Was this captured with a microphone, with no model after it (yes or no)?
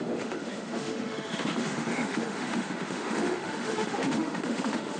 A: no